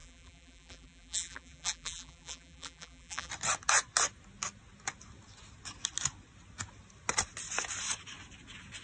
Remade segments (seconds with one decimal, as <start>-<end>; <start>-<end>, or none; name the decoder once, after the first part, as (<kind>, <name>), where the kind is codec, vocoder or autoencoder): 0.0-3.3 (vocoder, BigVGAN v2)